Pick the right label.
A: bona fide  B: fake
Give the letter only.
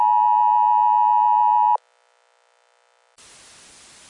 A